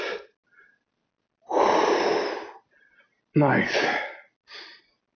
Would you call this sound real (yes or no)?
yes